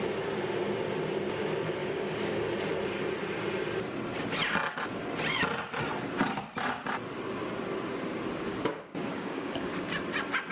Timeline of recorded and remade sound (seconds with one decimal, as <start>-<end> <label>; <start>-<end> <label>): 0.0-1.8 recorded; 1.8-2.5 remade; 2.5-8.5 recorded; 8.5-9.7 remade; 9.7-10.5 recorded